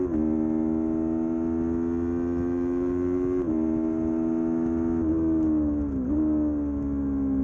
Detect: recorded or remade recorded